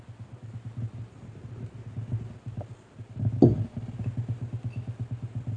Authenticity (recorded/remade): recorded